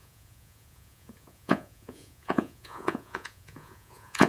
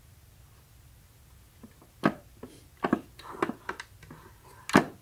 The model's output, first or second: first